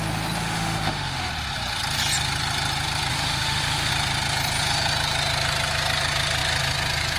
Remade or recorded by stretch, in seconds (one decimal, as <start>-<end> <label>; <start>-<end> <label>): 0.0-0.4 recorded; 0.4-1.3 remade; 1.3-3.1 recorded; 3.1-3.9 remade; 3.9-7.2 recorded